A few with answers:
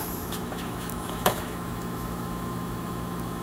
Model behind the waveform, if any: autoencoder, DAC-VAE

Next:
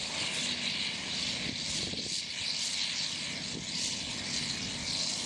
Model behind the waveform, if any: none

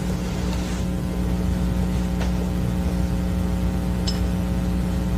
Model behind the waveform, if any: none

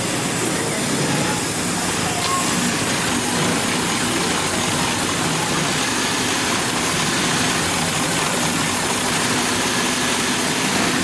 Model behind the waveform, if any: none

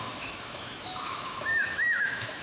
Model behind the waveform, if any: autoencoder, DAC-VAE